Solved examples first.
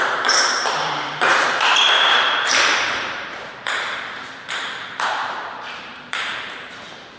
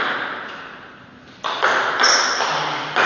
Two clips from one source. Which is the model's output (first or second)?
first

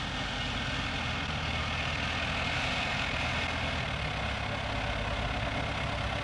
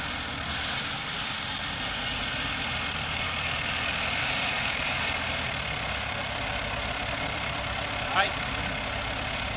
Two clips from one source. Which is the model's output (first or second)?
second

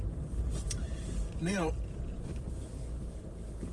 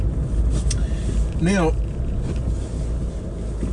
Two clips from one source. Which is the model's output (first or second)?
first